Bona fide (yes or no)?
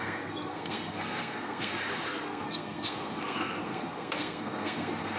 no